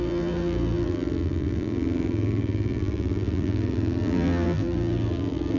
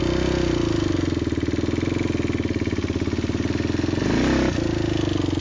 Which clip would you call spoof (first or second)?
first